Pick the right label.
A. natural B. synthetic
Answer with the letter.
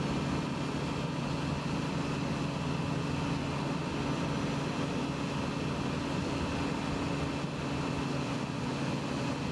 A